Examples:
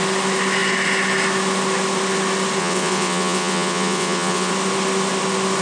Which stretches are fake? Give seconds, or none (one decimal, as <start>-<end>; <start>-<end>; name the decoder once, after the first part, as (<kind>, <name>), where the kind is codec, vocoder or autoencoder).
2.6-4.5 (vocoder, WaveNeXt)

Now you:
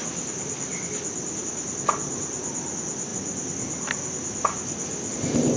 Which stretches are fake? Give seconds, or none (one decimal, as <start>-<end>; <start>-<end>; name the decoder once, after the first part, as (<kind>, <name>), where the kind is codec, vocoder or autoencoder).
none

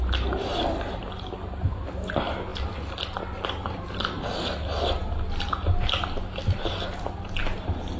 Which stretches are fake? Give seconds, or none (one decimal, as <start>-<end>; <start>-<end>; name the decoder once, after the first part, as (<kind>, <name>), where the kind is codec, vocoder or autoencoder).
none

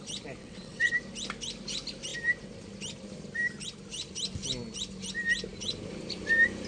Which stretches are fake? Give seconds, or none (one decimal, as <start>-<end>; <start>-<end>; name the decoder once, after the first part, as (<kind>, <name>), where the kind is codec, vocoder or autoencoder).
0.4-0.9 (vocoder, WaveNeXt)